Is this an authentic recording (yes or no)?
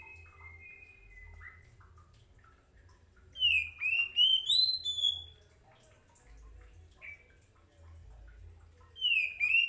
yes